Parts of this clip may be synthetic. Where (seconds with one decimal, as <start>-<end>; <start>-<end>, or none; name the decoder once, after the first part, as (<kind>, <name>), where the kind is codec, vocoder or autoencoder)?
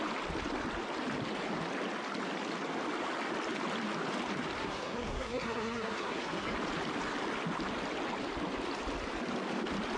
4.6-6.5 (codec, SNAC)